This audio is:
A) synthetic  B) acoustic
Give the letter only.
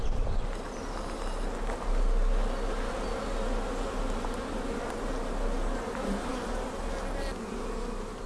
B